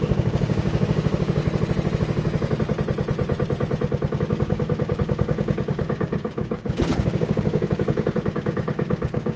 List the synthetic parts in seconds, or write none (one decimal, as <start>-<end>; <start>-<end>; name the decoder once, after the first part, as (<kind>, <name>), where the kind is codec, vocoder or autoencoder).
0.0-1.4 (codec, DAC); 4.2-9.4